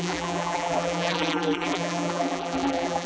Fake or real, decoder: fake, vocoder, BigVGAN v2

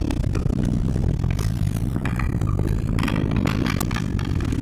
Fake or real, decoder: real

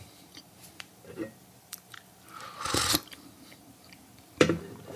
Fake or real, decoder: fake, vocoder, BigVGAN v2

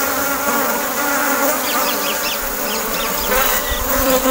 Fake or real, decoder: fake, vocoder, BigVGAN v2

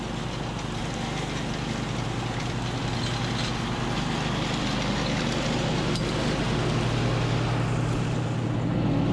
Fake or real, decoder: real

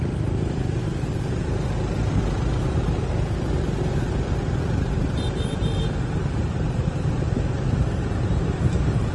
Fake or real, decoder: fake, vocoder, BigVGAN v2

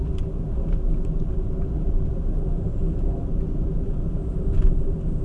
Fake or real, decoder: fake, vocoder, BigVGAN v2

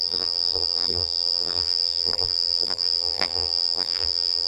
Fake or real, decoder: fake, vocoder, BigVGAN v2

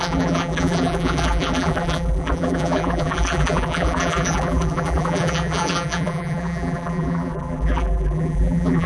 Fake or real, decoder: fake, vocoder, BigVGAN v2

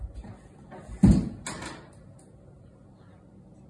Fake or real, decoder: real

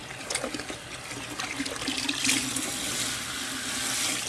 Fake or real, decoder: real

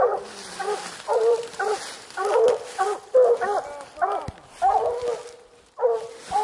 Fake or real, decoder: real